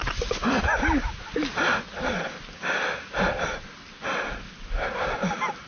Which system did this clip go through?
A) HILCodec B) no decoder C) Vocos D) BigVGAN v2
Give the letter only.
D